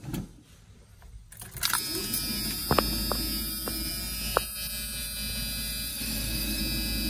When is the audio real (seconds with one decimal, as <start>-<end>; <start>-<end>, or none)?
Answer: 0.0-5.9; 6.6-7.1

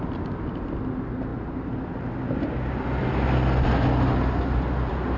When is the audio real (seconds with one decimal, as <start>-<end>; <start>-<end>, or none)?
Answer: 0.0-5.2